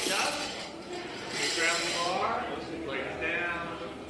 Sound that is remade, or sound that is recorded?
recorded